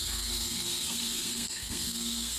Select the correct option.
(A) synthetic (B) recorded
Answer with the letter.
A